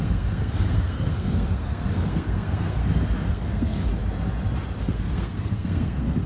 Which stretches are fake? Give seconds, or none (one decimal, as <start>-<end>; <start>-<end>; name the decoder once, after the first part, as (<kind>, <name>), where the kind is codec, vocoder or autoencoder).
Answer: 0.0-2.8 (codec, SNAC); 3.3-3.9; 4.8-6.3